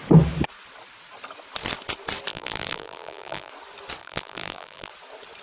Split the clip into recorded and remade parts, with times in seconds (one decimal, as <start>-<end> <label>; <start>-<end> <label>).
0.0-2.3 recorded; 2.3-3.5 remade; 3.5-4.0 recorded; 4.0-4.9 remade; 4.9-5.4 recorded